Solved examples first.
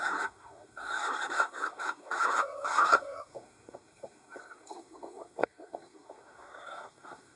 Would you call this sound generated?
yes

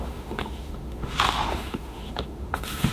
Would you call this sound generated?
yes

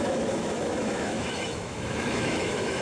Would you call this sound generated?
yes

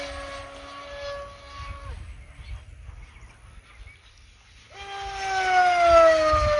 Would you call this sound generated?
no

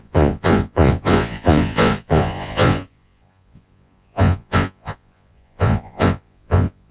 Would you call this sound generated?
yes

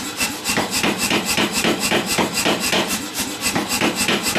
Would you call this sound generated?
yes